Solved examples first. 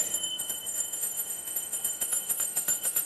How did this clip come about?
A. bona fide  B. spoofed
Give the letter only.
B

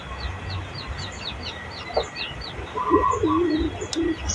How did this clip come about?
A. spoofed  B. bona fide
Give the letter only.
B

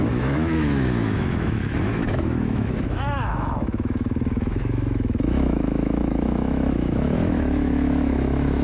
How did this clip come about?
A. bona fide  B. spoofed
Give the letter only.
B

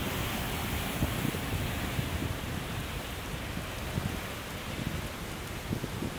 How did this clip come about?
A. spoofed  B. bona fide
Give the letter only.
B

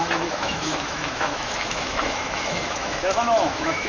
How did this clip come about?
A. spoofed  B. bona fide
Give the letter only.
A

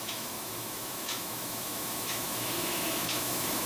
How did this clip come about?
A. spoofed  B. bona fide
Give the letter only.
A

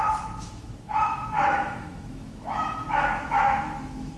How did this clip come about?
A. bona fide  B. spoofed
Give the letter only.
B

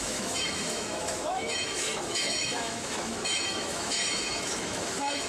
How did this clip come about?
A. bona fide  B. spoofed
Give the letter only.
B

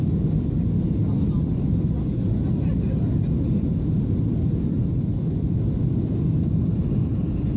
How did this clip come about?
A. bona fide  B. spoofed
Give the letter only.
A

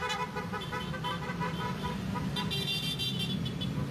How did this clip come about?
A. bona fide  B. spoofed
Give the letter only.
A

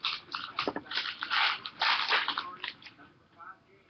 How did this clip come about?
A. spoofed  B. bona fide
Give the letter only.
B